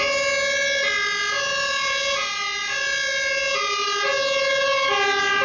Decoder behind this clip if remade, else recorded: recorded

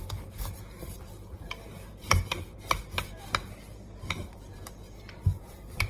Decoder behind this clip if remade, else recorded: remade, vocoder, BigVGAN v2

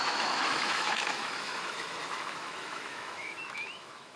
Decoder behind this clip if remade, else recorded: remade, autoencoder, DAC-VAE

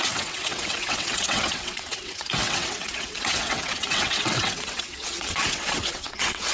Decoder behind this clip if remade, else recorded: remade, vocoder, WaveNeXt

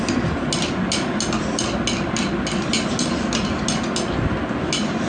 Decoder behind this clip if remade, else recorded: recorded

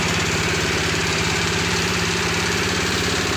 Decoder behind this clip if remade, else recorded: remade, vocoder, BigVGAN v2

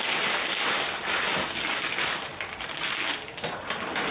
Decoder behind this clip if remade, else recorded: recorded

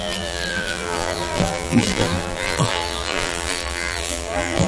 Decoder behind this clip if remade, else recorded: remade, vocoder, BigVGAN v2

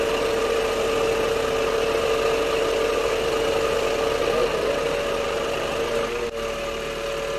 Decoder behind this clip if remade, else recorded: recorded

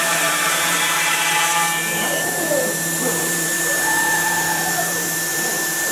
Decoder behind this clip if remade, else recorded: remade, vocoder, BigVGAN v2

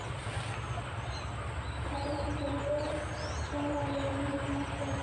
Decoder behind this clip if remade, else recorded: recorded